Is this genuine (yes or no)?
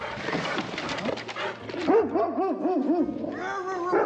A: yes